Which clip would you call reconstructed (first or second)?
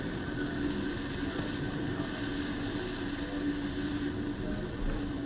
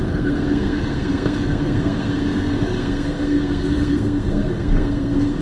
second